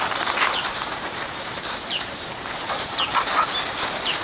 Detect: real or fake fake